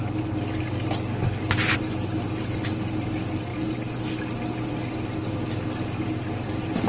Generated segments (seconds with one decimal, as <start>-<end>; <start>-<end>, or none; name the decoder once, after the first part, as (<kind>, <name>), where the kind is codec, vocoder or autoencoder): 0.0-3.5 (vocoder, BigVGAN v2); 5.3-6.9